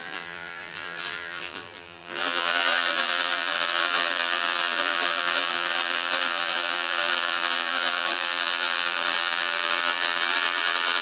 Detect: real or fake fake